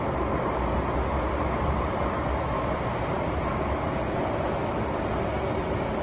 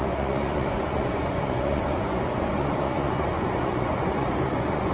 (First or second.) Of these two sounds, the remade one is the second